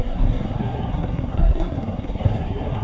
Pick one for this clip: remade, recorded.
remade